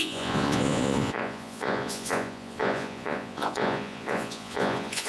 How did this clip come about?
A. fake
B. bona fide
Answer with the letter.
A